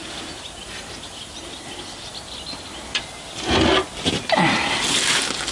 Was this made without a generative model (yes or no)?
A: yes